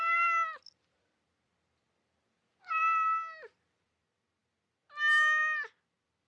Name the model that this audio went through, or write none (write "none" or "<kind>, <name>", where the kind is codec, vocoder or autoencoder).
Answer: none